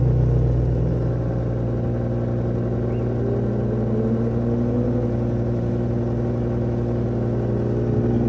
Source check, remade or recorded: recorded